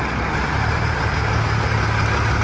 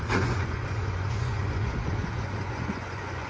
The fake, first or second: second